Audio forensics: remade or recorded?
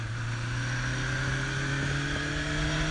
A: recorded